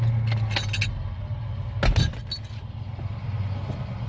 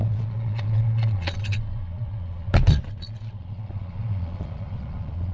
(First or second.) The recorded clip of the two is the first